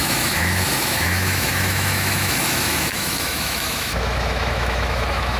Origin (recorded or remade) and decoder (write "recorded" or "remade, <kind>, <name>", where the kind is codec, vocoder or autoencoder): remade, autoencoder, DAC-VAE